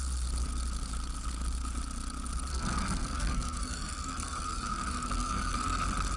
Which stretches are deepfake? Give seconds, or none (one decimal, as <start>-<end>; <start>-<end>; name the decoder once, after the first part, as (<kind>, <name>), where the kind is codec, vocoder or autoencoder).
2.5-5.8 (codec, SNAC)